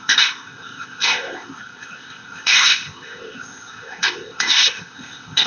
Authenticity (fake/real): fake